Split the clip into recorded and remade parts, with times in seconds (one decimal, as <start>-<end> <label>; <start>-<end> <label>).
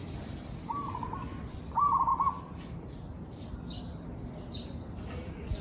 0.0-0.9 recorded; 0.9-2.1 remade; 2.1-3.5 recorded; 3.5-5.6 remade